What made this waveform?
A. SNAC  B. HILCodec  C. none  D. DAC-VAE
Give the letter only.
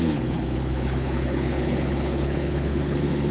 B